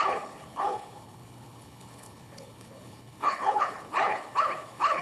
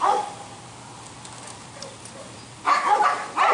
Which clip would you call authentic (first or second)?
second